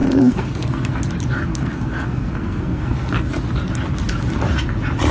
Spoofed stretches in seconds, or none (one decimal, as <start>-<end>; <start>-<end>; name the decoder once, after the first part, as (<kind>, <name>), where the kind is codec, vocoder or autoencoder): 0.0-1.0 (codec, SNAC); 1.5-3.3